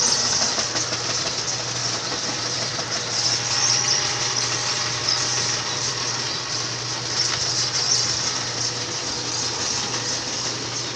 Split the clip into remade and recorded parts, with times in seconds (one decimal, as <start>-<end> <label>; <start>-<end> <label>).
0.0-1.8 recorded; 1.8-5.9 remade; 5.9-11.0 recorded

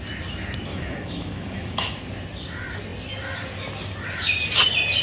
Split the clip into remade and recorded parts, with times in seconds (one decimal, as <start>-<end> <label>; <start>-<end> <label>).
0.0-0.7 recorded; 0.7-2.0 remade; 2.0-5.0 recorded